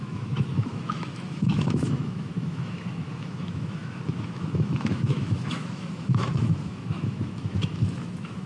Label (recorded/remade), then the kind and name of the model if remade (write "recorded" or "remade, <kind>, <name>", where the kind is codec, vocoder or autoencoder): remade, autoencoder, DAC-VAE